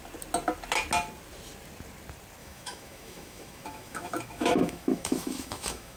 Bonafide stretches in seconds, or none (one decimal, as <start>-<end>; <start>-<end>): 0.0-2.4

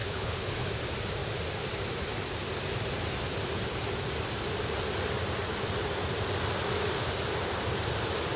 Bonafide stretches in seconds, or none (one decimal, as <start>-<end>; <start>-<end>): 0.7-8.4

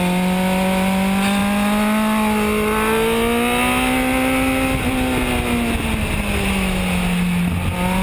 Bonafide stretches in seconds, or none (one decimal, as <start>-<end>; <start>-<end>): 0.0-8.0

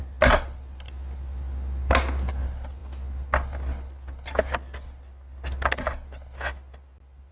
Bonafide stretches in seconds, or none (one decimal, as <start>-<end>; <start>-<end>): 0.0-7.3

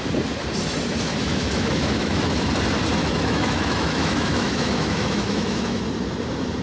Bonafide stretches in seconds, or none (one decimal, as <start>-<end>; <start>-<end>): 0.0-1.1; 2.5-3.0; 5.8-6.6